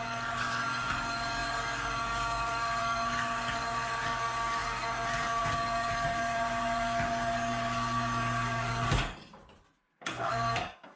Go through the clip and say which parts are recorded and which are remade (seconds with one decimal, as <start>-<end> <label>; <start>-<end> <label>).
0.0-9.4 remade; 9.4-10.1 recorded; 10.1-11.0 remade